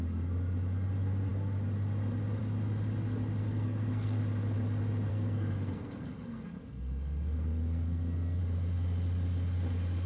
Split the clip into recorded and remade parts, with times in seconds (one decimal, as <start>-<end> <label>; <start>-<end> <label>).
0.0-3.4 recorded; 3.4-4.2 remade; 4.2-5.1 recorded; 5.1-8.4 remade; 8.4-10.1 recorded